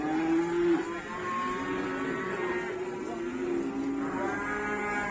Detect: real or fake real